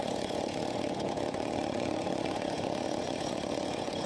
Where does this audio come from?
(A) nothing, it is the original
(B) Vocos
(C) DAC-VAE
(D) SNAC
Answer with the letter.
B